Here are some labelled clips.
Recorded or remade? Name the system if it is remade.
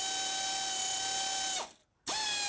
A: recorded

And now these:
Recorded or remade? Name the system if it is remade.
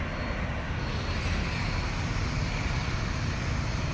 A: recorded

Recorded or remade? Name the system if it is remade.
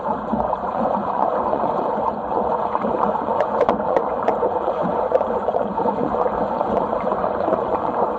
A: remade, vocoder, Vocos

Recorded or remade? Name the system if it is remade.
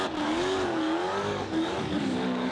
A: remade, codec, DAC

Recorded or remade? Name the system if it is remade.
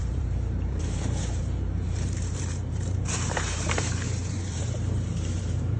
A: remade, vocoder, BigVGAN v2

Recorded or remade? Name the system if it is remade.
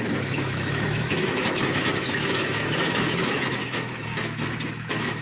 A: remade, autoencoder, DAC-VAE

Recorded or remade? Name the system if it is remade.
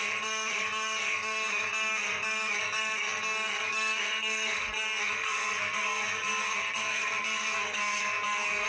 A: remade, codec, SNAC